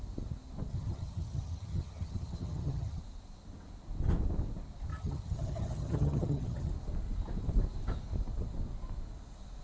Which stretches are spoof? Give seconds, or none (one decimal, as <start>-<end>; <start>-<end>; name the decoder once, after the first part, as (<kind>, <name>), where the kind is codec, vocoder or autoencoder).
0.7-3.0 (vocoder, HiFi-GAN); 4.9-6.7